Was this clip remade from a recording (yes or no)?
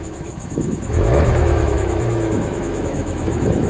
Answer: yes